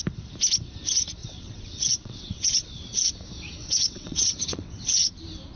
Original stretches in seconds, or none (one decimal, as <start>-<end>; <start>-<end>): 0.0-1.2; 3.1-3.6; 5.1-5.6